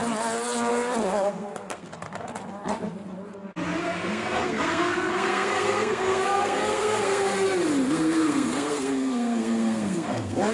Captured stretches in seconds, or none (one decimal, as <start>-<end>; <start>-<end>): 0.0-0.7; 1.9-3.8; 7.3-7.9